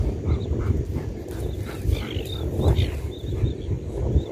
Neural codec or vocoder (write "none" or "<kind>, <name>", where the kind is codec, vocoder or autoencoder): none